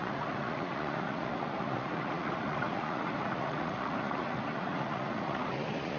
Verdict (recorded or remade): remade